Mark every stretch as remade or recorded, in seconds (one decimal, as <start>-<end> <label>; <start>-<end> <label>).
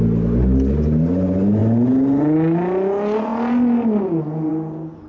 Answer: 0.0-5.1 recorded